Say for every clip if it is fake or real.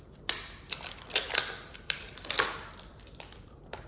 fake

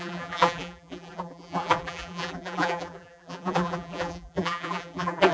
fake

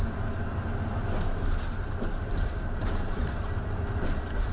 fake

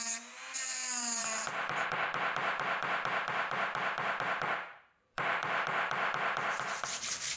fake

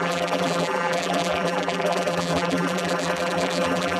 fake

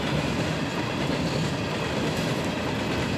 fake